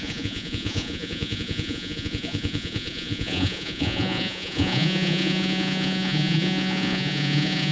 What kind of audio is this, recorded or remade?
remade